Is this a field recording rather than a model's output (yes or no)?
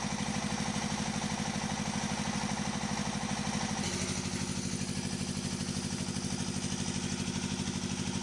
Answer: yes